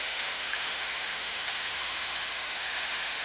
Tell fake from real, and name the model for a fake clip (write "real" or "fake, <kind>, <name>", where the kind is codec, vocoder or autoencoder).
fake, autoencoder, DAC-VAE